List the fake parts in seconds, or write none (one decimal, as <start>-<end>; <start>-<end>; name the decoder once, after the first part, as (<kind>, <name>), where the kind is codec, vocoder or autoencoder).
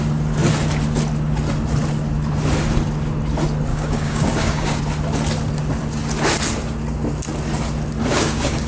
3.7-4.8 (codec, DAC); 8.1-8.7